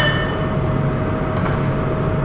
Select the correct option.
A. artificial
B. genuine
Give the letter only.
B